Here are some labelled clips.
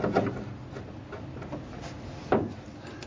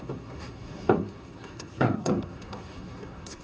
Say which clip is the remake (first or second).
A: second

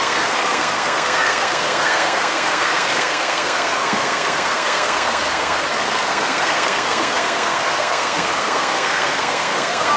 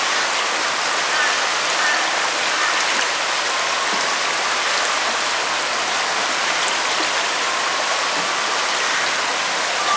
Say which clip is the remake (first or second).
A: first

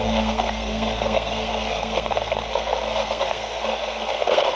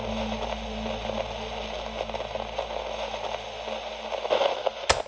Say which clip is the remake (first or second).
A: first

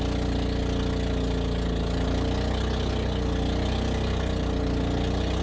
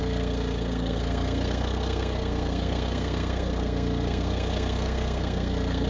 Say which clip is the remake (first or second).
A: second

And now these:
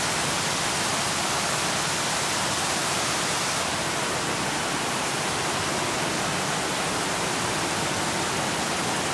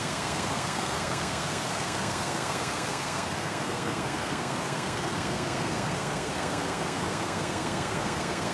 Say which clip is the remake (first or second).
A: second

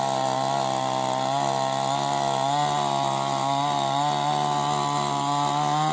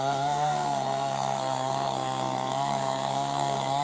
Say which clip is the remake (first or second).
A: second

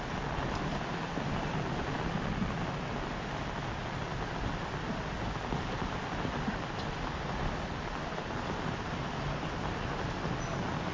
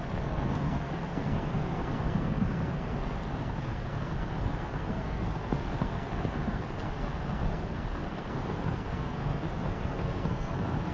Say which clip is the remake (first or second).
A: second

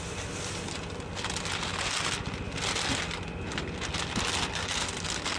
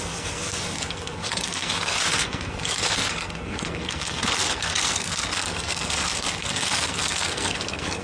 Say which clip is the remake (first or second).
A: second